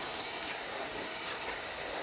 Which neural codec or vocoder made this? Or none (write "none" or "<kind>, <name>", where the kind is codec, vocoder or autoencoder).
none